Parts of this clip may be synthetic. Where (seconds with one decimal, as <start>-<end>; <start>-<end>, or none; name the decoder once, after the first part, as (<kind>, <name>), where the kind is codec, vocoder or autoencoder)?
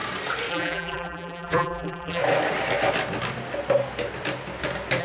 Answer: 0.5-2.2 (vocoder, BigVGAN v2)